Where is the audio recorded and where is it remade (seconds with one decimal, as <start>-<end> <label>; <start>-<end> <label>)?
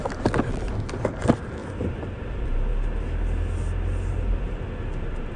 0.0-1.6 recorded; 1.6-2.3 remade; 2.3-5.4 recorded